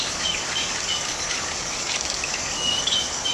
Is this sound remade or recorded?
remade